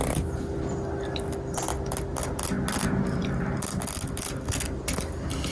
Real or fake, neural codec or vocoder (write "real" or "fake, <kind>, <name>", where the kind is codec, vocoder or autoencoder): real